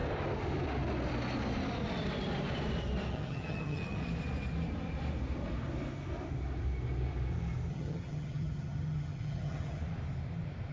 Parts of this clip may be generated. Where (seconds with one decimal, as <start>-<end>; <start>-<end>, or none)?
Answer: 3.1-4.0; 7.7-9.8